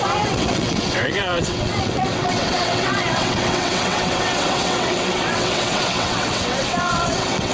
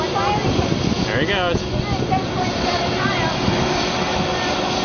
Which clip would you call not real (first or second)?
first